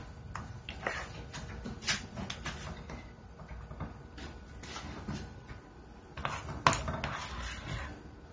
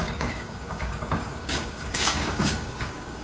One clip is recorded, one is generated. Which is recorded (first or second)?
first